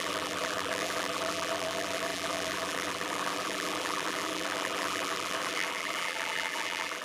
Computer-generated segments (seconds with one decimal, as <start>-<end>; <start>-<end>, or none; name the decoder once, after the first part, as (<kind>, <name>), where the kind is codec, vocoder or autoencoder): 0.0-7.0 (vocoder, BigVGAN v2)